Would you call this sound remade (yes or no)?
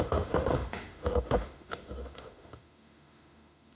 yes